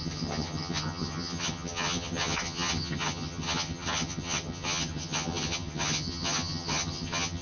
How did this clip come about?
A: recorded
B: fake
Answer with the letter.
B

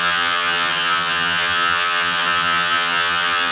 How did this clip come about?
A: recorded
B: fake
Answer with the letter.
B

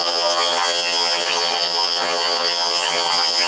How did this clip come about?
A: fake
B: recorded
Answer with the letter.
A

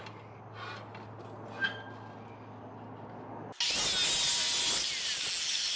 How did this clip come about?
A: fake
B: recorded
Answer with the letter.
B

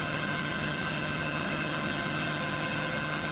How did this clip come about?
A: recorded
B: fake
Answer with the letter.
B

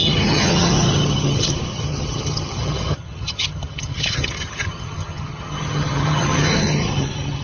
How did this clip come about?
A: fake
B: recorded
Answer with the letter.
A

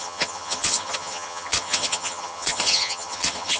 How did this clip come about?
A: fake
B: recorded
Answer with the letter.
A